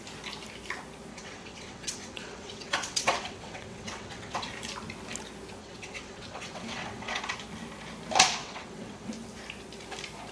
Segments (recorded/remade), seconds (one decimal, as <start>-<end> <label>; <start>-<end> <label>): 0.0-1.1 recorded; 1.1-4.5 remade; 4.5-5.6 recorded; 5.6-7.2 remade; 7.2-8.4 recorded; 8.4-9.1 remade; 9.1-10.3 recorded